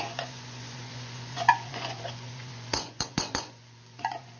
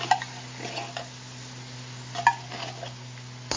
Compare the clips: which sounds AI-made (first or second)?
first